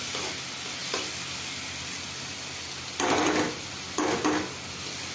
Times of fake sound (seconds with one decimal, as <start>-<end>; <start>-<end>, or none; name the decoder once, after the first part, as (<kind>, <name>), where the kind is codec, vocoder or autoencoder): none